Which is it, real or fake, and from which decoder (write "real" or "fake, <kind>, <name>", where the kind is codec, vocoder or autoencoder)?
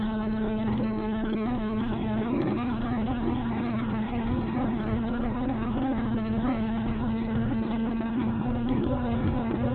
fake, codec, SNAC